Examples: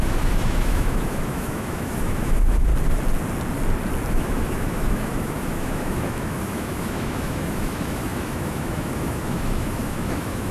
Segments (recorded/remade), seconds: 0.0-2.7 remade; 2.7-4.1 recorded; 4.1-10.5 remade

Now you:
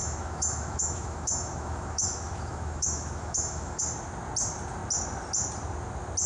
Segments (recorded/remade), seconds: 0.0-3.8 remade; 3.8-6.3 recorded

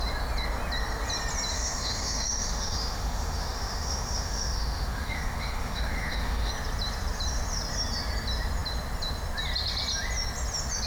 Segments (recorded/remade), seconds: 0.0-1.5 recorded; 1.5-6.5 remade; 6.5-10.9 recorded

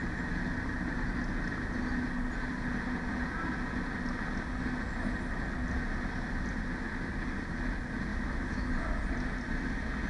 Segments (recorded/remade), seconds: 0.0-8.1 recorded; 8.1-8.7 remade; 8.7-10.1 recorded

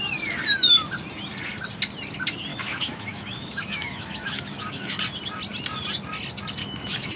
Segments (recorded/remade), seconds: 0.0-2.5 recorded; 2.5-5.0 remade; 5.0-6.6 recorded; 6.6-7.2 remade

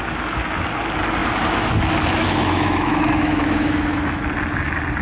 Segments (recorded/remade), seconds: 0.0-2.2 recorded; 2.2-4.2 remade; 4.2-5.0 recorded